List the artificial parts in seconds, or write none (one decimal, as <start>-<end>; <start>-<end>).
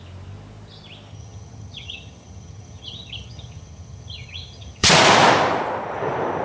1.1-4.9